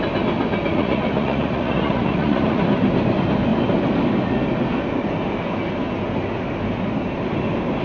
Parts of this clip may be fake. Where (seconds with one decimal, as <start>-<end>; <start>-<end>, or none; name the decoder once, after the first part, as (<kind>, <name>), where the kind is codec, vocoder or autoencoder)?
0.7-2.6 (vocoder, Vocos)

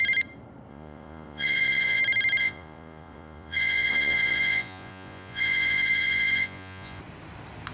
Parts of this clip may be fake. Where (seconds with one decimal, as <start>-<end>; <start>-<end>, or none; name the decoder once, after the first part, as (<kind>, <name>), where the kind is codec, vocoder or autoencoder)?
0.7-2.0 (vocoder, Vocos); 2.4-7.0

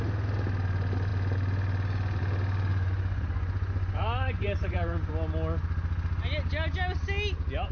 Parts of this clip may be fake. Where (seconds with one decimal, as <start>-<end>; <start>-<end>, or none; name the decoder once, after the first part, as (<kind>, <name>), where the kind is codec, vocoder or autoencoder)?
2.7-5.1 (vocoder, Vocos)

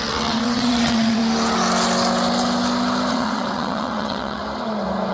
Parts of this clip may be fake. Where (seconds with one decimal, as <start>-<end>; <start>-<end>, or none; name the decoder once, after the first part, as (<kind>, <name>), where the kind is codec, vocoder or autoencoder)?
0.0-1.2 (vocoder, WaveNeXt); 3.1-4.4

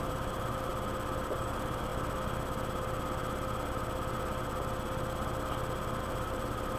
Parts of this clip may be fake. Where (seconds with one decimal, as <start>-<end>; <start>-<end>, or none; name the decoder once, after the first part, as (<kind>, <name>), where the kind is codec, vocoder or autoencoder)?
0.0-0.7 (vocoder, BigVGAN v2); 1.4-1.9; 6.0-6.8

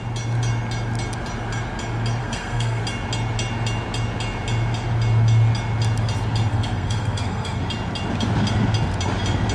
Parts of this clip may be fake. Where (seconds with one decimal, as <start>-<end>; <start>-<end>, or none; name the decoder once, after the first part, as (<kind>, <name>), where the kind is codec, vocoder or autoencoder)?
2.2-2.8 (codec, SNAC); 6.5-7.6